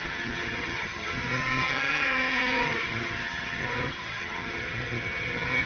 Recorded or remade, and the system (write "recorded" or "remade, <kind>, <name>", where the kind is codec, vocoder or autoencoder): remade, vocoder, HiFi-GAN